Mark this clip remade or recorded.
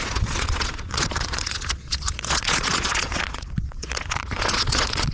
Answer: remade